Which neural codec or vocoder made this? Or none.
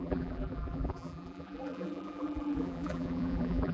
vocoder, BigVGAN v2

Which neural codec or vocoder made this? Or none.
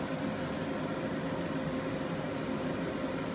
none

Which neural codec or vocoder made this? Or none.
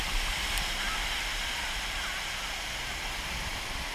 none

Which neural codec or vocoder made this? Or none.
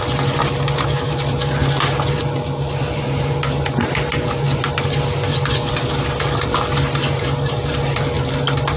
none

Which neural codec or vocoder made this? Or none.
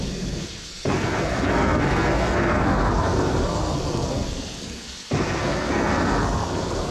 codec, SNAC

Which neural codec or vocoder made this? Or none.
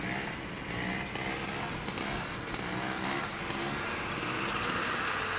none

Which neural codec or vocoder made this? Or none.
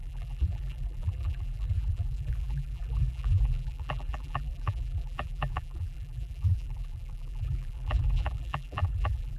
vocoder, BigVGAN v2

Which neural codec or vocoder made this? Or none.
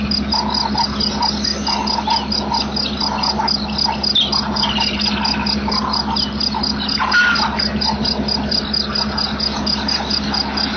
none